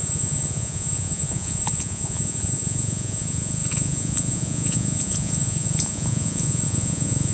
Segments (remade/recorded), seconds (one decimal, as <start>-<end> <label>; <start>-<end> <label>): 0.0-7.3 remade